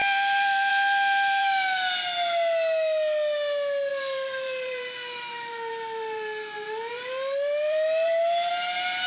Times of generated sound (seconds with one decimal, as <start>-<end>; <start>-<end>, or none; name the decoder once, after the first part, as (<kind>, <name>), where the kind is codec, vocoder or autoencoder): 0.0-1.4 (vocoder, BigVGAN v2); 3.9-8.5